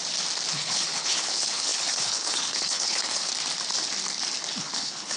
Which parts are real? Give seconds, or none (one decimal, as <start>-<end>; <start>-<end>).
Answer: 0.0-0.5; 3.3-4.6